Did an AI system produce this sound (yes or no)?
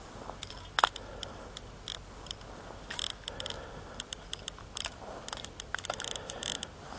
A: no